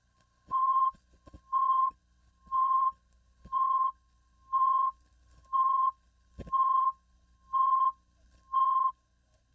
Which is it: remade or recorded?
remade